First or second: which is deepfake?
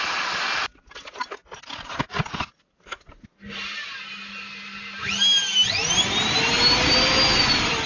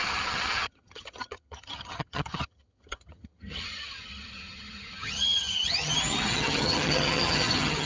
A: second